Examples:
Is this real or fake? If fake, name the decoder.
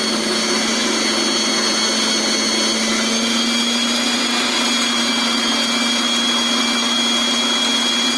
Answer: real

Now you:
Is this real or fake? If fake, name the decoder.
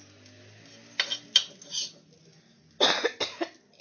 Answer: real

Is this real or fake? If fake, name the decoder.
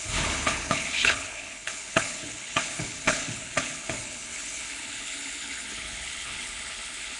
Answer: fake, codec, HILCodec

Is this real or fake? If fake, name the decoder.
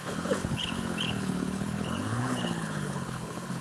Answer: fake, codec, HILCodec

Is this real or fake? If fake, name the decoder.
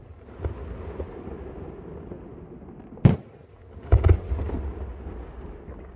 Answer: real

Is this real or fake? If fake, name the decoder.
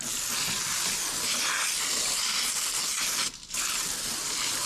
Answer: real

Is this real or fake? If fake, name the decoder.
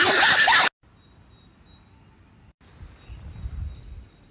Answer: real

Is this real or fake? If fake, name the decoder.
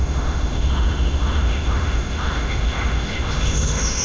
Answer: fake, autoencoder, DAC-VAE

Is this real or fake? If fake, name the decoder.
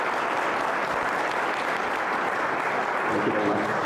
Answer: fake, vocoder, BigVGAN v2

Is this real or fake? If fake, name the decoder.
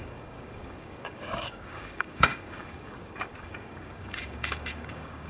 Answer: fake, codec, DAC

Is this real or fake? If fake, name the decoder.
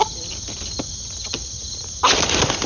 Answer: real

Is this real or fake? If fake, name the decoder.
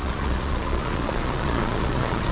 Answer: fake, vocoder, Vocos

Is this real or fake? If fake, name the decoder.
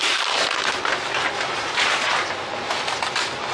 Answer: real